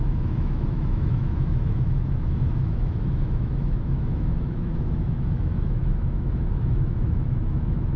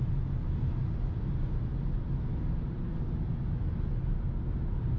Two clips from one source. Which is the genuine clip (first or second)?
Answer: second